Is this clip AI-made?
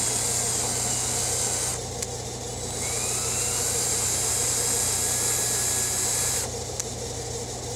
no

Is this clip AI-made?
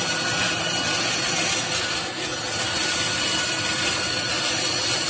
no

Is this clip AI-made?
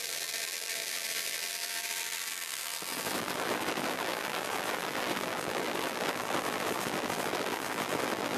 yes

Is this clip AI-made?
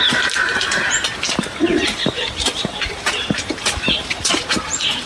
yes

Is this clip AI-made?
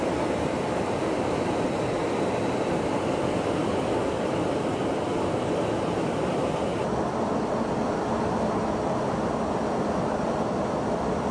yes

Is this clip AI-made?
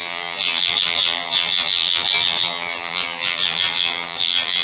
yes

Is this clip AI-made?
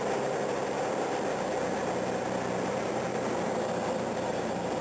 no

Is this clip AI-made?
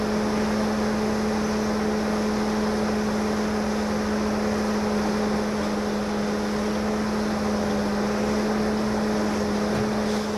no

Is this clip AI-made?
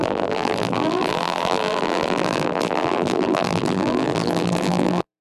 yes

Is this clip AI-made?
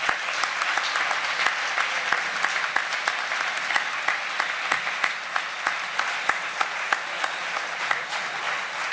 no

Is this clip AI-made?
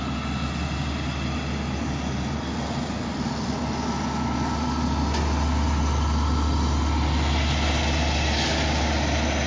no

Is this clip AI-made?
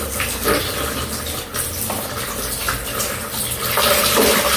yes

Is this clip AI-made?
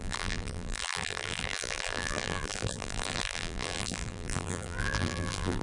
yes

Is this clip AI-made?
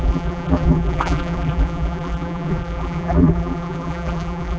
yes